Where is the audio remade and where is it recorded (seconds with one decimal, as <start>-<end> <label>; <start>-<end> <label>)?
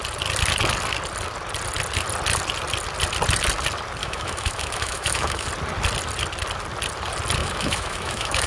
0.0-4.0 recorded; 4.0-5.5 remade; 5.5-7.4 recorded; 7.4-8.5 remade